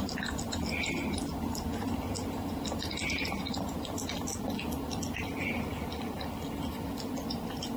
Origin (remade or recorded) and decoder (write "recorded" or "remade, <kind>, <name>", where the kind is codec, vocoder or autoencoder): recorded